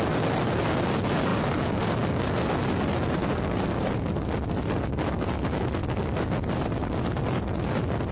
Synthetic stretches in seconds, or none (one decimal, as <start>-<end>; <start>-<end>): none